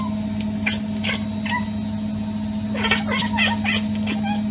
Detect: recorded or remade recorded